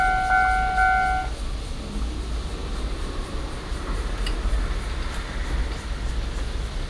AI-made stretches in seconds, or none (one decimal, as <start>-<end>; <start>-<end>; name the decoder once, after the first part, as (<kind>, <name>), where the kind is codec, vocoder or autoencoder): 2.6-6.1 (vocoder, BigVGAN v2)